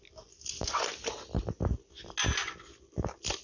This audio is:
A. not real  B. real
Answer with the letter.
B